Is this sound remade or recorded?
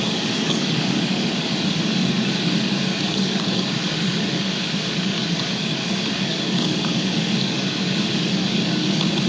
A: remade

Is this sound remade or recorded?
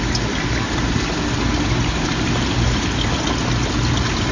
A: recorded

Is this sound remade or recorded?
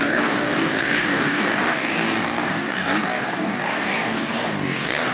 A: remade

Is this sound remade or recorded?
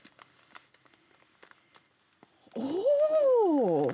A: recorded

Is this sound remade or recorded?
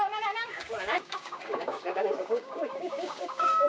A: remade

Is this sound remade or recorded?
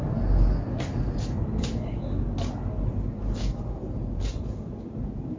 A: recorded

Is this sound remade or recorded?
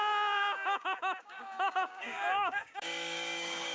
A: remade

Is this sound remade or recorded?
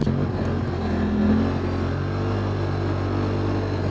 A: recorded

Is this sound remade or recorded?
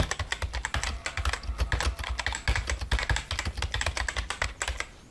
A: recorded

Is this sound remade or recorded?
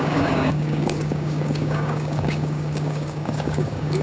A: remade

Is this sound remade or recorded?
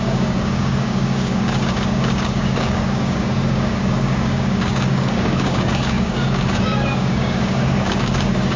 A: remade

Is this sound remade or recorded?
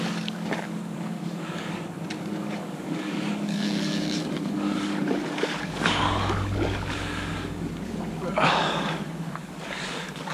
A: remade